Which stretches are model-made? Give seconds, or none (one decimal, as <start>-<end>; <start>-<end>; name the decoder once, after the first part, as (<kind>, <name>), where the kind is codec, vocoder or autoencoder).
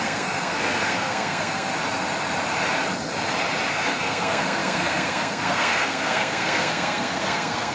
0.0-1.7 (codec, SNAC); 3.7-7.7